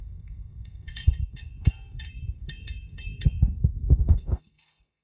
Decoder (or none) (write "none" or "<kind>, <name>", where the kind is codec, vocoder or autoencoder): codec, SNAC